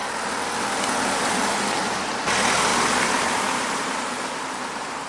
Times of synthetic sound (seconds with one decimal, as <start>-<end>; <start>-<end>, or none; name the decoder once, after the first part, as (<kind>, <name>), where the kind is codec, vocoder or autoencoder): 2.7-5.1 (vocoder, BigVGAN v2)